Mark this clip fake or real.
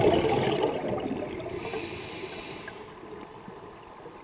real